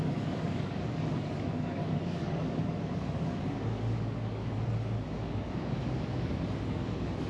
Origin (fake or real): fake